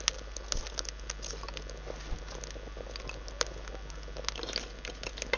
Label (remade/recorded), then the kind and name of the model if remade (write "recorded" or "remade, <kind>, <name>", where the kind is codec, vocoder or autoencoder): recorded